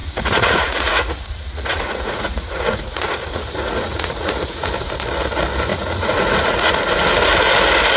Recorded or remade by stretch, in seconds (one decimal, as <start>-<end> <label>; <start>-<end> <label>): 0.0-4.7 remade; 4.7-5.7 recorded; 5.7-6.7 remade; 6.7-8.0 recorded